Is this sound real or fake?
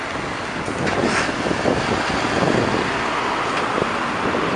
real